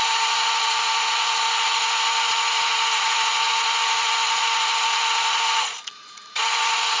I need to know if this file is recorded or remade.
remade